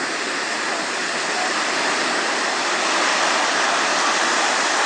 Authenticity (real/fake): real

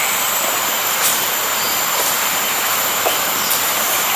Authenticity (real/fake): fake